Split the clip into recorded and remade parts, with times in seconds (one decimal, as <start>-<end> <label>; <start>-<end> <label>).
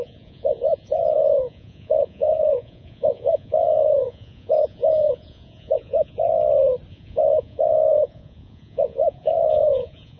0.0-6.3 remade; 6.3-6.9 recorded; 6.9-10.2 remade